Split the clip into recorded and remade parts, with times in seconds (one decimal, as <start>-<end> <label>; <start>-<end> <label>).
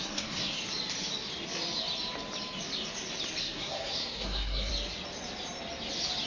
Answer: 0.0-0.6 remade; 0.6-3.4 recorded; 3.4-4.7 remade; 4.7-6.3 recorded